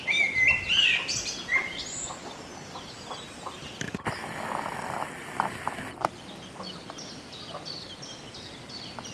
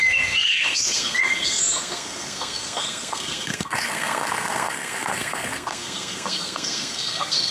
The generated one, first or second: second